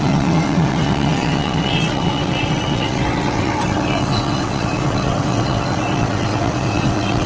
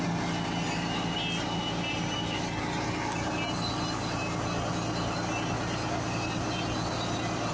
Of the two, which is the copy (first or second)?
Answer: first